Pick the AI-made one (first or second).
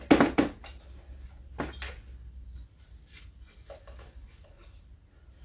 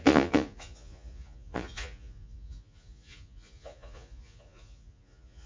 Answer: second